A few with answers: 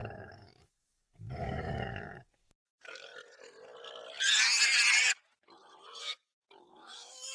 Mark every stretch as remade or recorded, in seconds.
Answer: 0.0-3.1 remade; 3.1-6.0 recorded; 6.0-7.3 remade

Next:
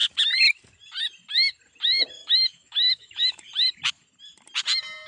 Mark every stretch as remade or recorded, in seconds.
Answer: 0.0-2.2 recorded; 2.2-3.5 remade; 3.5-5.1 recorded

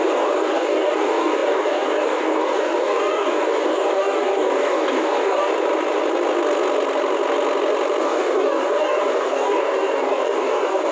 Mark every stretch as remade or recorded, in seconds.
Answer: 0.0-5.5 remade; 5.5-8.0 recorded; 8.0-10.9 remade

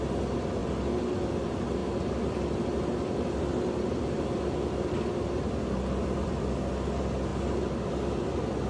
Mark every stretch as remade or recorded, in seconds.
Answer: 0.0-1.8 recorded; 1.8-6.6 remade; 6.6-8.7 recorded

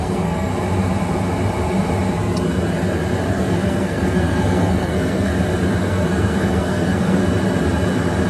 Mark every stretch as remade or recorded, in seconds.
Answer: 0.0-0.5 remade; 0.5-3.3 recorded; 3.3-5.3 remade; 5.3-5.8 recorded; 5.8-7.3 remade; 7.3-8.3 recorded